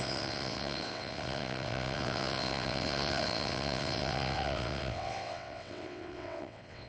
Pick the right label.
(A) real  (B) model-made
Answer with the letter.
B